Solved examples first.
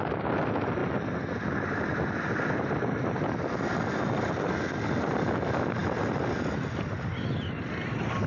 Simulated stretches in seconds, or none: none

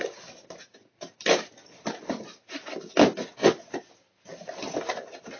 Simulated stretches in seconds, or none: none

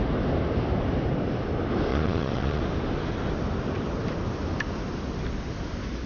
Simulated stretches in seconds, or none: 1.9-2.6 (vocoder, Vocos)

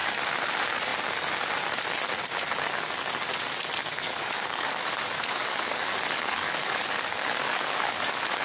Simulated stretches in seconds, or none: 3.8-8.4 (codec, DAC)

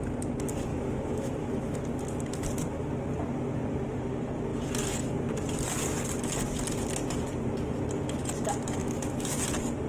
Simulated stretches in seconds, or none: 0.7-1.8 (autoencoder, DAC-VAE); 8.8-9.4

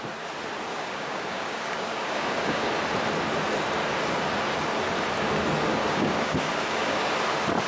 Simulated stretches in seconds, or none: 0.7-2.7 (codec, DAC); 5.8-7.1